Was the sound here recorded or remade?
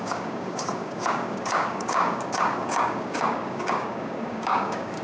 remade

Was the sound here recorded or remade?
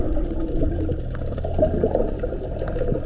recorded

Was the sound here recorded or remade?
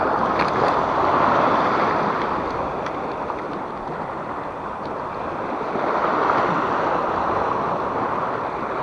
recorded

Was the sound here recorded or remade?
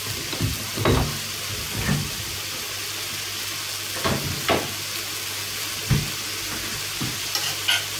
recorded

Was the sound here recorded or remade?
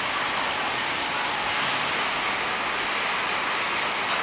recorded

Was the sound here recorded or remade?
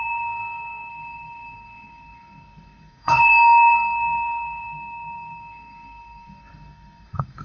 remade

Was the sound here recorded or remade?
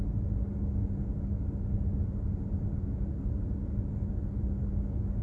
recorded